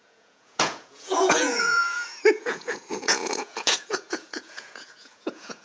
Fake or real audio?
fake